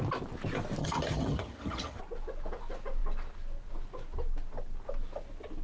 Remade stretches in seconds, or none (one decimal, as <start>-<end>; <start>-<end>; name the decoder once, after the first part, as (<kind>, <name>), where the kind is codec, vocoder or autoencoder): 0.8-2.0 (vocoder, HiFi-GAN)

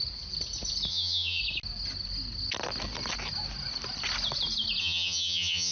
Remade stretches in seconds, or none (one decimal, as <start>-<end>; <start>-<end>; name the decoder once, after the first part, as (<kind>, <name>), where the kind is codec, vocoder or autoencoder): 0.9-1.4 (vocoder, HiFi-GAN); 4.8-5.7

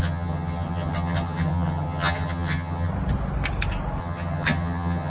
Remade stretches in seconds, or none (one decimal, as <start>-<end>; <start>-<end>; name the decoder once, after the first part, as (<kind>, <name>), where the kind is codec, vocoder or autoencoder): 0.0-2.9 (vocoder, HiFi-GAN); 4.0-5.1

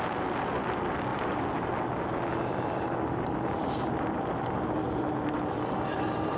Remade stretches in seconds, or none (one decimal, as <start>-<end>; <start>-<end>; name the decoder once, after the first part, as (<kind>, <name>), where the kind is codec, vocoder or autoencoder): none

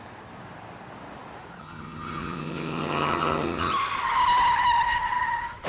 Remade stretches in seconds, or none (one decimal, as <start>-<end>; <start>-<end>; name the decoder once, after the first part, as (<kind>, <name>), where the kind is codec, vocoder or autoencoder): 1.6-3.7 (vocoder, HiFi-GAN)

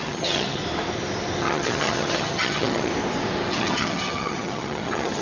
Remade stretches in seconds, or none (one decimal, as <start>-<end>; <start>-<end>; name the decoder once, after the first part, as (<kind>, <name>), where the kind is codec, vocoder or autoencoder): 0.0-0.6 (vocoder, HiFi-GAN); 1.4-2.9; 3.5-5.2